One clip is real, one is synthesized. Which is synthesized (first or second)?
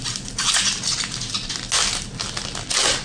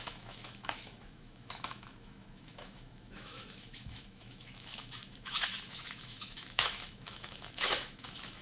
second